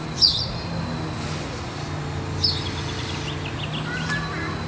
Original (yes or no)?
yes